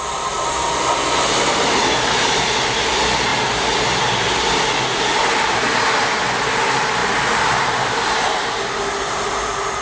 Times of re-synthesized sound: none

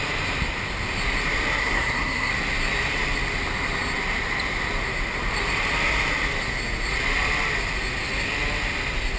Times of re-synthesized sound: 1.6-2.3 (codec, SNAC)

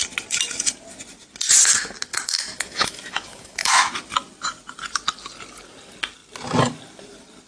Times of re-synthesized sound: 2.1-3.9 (autoencoder, DAC-VAE)

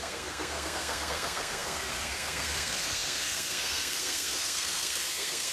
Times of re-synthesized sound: 0.0-5.5 (codec, SNAC)

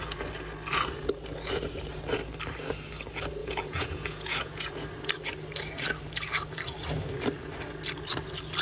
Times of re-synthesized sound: 3.4-4.7 (vocoder, Vocos)

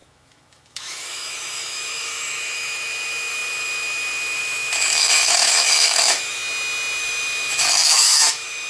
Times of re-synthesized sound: 0.0-6.4 (autoencoder, DAC-VAE); 7.0-8.7

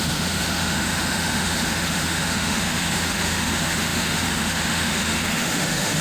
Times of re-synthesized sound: 0.0-6.0 (autoencoder, DAC-VAE)

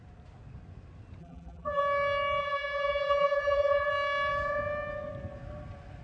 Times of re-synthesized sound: 1.2-1.8 (vocoder, BigVGAN v2); 2.4-3.9